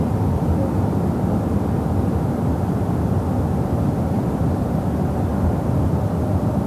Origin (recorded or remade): recorded